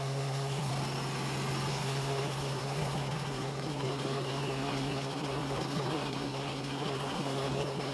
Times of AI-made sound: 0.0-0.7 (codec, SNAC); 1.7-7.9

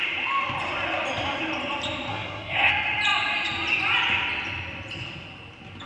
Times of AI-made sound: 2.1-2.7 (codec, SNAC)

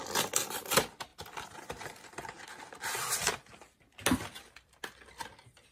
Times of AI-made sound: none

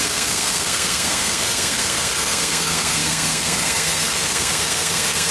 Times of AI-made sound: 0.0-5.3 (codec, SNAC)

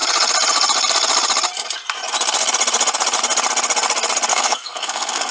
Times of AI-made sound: 4.3-5.3 (codec, SNAC)

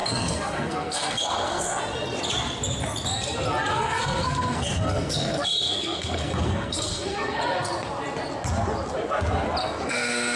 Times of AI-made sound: 0.0-1.8 (codec, SNAC); 3.7-7.4; 9.6-10.4